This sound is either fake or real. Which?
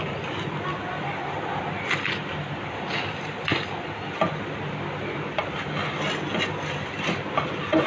real